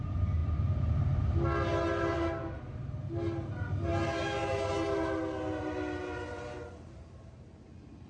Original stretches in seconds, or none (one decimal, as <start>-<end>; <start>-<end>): 0.0-0.4; 0.9-8.1